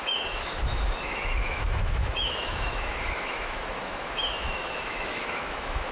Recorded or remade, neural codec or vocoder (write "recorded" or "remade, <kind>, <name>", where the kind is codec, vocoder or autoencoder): remade, autoencoder, DAC-VAE